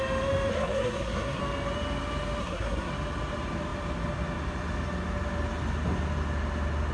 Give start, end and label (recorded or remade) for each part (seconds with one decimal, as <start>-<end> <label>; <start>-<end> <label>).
0.0-0.5 recorded; 0.5-1.4 remade; 1.4-2.4 recorded; 2.4-2.9 remade; 2.9-6.9 recorded